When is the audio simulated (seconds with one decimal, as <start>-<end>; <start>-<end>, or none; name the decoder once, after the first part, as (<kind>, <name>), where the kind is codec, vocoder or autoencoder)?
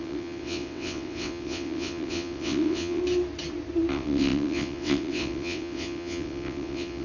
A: 0.0-3.0 (vocoder, WaveNeXt); 3.9-7.0